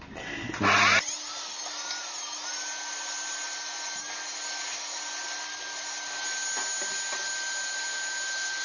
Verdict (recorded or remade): recorded